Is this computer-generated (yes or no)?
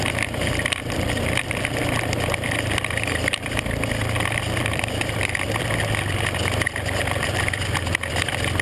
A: yes